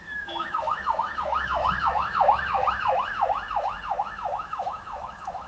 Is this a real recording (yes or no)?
no